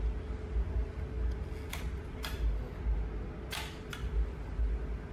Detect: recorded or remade recorded